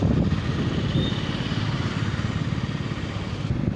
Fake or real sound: real